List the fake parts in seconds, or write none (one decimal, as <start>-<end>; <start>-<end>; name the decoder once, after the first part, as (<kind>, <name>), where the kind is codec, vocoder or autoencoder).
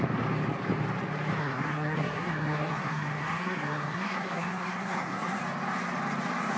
1.4-5.4 (codec, SNAC)